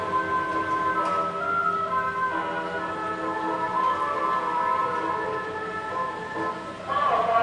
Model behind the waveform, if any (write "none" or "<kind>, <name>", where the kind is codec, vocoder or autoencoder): none